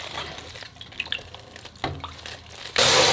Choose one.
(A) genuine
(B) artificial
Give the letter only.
A